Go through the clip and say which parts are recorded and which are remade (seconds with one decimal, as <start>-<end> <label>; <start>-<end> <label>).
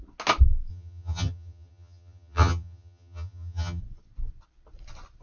0.0-0.7 recorded; 0.7-3.8 remade; 3.8-5.2 recorded